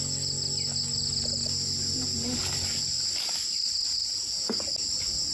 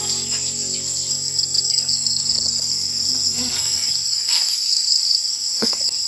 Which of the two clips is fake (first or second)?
second